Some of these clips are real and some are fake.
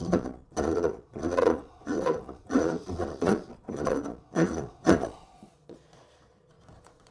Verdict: fake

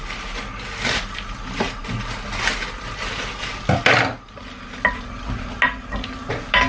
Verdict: real